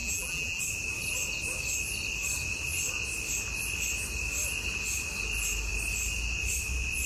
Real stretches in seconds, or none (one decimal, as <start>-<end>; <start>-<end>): 0.6-7.1